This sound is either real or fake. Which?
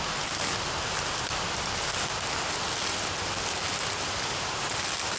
real